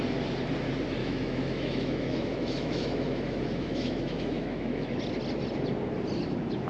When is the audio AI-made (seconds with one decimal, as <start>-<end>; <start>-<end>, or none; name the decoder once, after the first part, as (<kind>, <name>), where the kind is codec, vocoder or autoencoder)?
1.0-5.0 (autoencoder, DAC-VAE)